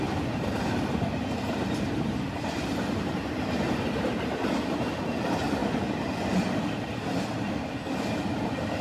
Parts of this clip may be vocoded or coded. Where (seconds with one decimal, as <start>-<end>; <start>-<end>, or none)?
none